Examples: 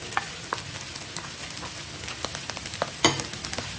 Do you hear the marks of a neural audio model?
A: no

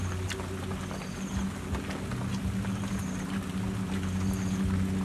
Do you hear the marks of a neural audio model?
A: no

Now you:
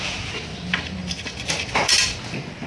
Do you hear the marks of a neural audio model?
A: no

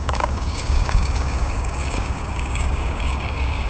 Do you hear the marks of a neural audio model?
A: yes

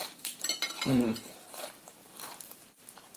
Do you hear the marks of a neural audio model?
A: yes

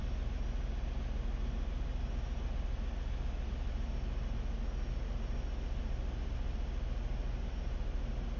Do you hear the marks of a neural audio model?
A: no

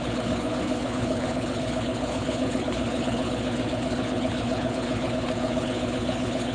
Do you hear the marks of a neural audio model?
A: yes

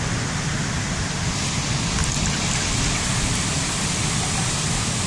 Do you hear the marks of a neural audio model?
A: no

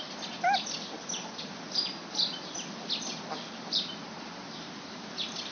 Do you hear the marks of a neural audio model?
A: no